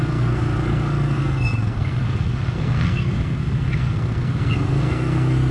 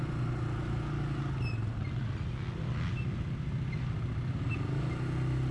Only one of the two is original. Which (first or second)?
second